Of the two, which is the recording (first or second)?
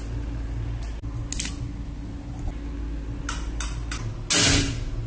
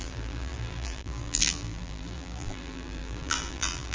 first